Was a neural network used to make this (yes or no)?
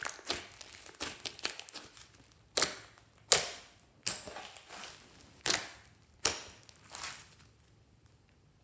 no